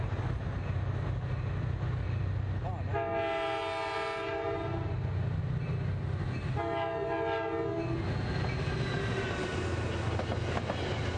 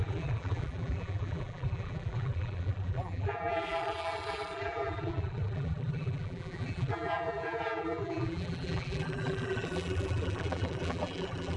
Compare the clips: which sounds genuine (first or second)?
first